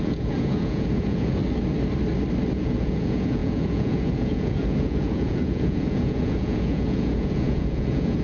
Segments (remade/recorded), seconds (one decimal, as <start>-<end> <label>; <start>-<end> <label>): 0.0-1.4 remade; 1.4-2.5 recorded; 2.5-8.2 remade